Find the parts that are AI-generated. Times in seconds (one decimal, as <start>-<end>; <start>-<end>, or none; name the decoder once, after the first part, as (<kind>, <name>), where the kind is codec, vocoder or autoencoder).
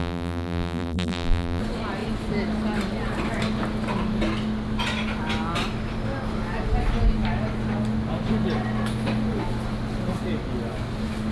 0.0-1.6 (vocoder, BigVGAN v2)